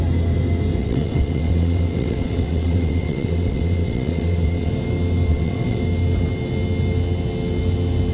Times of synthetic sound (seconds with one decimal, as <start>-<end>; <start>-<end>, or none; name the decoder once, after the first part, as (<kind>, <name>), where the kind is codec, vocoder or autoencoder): 0.8-4.7 (vocoder, WaveNeXt); 5.3-5.8